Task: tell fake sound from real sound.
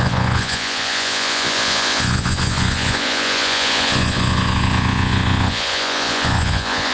fake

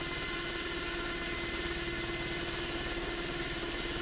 real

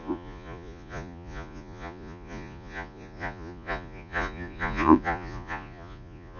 fake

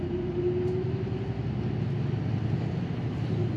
real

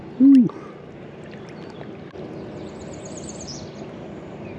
real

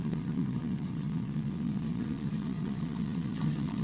fake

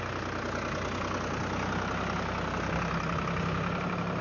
real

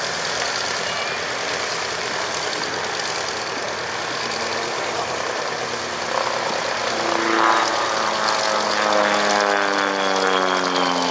real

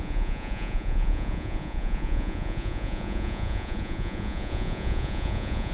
fake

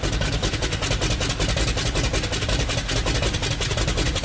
real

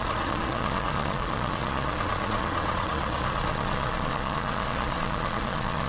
fake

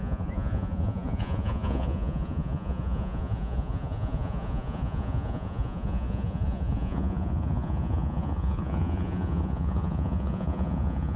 fake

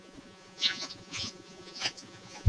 fake